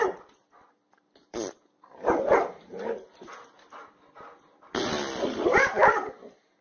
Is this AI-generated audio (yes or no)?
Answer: no